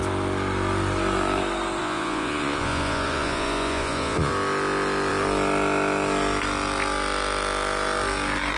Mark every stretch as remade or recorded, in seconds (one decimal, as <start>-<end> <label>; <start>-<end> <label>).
0.0-1.8 recorded; 1.8-4.3 remade; 4.3-8.6 recorded